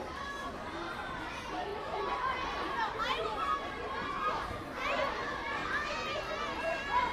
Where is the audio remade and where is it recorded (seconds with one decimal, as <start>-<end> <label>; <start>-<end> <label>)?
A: 0.0-5.6 remade; 5.6-6.6 recorded; 6.6-7.1 remade